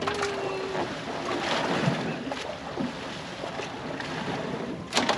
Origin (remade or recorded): recorded